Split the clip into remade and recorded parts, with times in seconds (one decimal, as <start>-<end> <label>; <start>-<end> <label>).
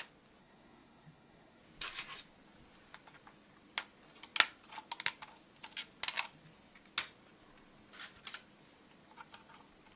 0.0-0.4 recorded; 0.4-1.6 remade; 1.6-10.0 recorded